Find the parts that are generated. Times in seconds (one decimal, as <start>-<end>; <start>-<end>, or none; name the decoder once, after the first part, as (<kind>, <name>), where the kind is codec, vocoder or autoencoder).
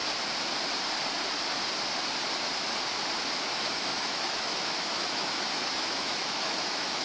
3.4-7.0 (autoencoder, DAC-VAE)